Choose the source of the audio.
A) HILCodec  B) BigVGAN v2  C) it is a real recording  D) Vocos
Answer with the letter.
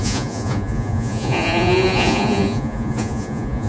D